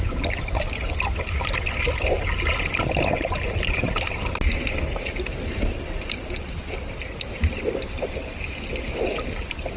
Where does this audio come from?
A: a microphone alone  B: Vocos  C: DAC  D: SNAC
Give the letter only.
A